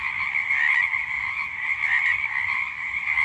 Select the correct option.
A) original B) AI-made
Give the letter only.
A